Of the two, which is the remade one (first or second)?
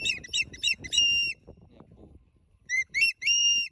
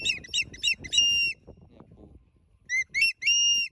first